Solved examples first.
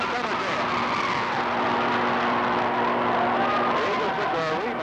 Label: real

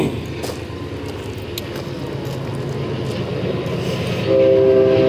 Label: real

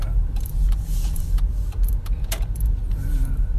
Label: fake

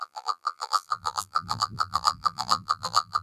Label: fake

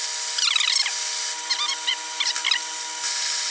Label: real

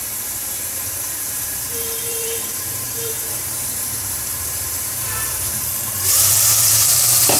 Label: fake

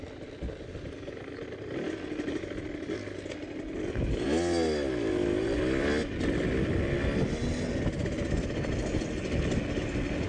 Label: real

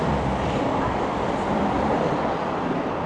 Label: fake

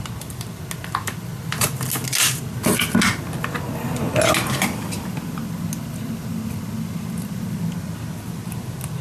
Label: real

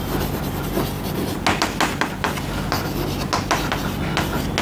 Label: real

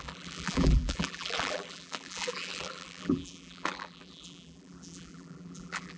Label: fake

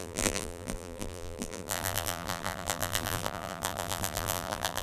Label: fake